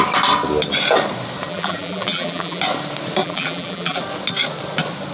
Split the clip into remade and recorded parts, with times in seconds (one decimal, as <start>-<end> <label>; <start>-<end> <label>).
0.0-1.5 recorded; 1.5-2.6 remade; 2.6-3.2 recorded; 3.2-4.0 remade; 4.0-5.1 recorded